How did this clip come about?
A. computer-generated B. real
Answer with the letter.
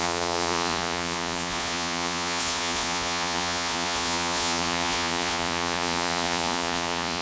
A